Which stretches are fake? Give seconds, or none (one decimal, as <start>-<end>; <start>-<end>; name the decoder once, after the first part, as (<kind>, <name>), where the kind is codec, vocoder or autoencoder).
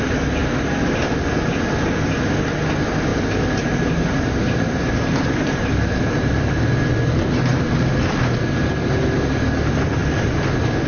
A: 3.1-6.6 (vocoder, BigVGAN v2); 7.5-8.2